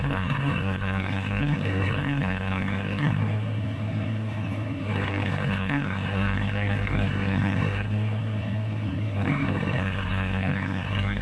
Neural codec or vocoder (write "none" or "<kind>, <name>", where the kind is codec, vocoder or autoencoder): codec, SNAC